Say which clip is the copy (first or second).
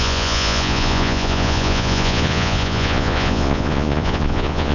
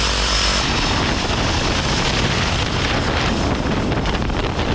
first